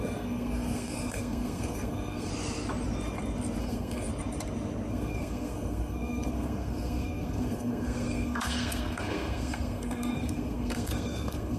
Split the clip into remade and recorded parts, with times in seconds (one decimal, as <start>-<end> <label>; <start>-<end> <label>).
0.0-2.3 remade; 2.3-3.6 recorded; 3.6-4.1 remade; 4.1-4.9 recorded; 4.9-11.6 remade